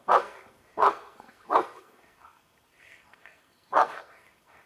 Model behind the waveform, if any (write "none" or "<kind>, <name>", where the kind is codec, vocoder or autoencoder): codec, SNAC